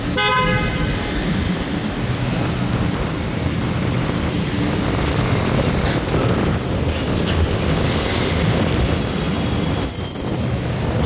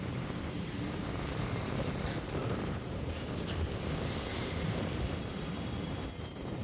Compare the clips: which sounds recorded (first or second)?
first